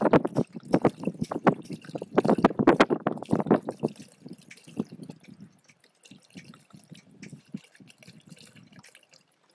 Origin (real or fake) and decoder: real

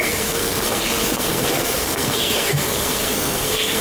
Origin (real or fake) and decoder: fake, codec, SNAC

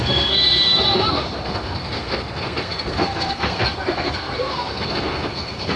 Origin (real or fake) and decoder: fake, codec, SNAC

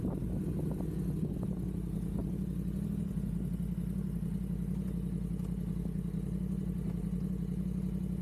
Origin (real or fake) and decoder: real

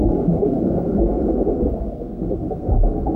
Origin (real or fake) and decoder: fake, codec, SNAC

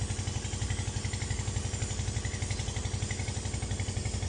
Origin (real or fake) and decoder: real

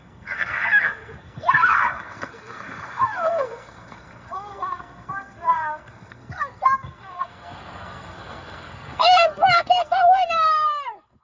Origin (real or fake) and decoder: fake, codec, SNAC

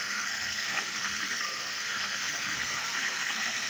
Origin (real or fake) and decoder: fake, codec, SNAC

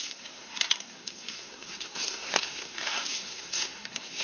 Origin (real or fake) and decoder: fake, codec, SNAC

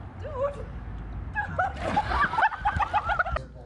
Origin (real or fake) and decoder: real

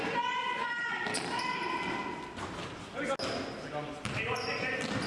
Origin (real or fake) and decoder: real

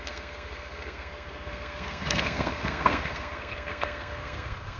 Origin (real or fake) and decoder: fake, codec, SNAC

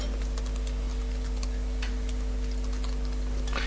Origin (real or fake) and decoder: real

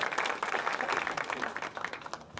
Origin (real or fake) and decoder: real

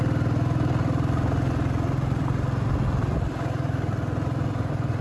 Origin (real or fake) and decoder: real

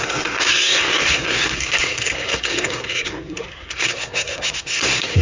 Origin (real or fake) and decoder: fake, codec, SNAC